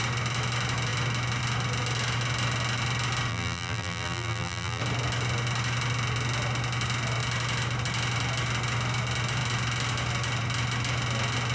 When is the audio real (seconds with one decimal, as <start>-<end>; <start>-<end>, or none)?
0.0-3.3; 4.8-11.5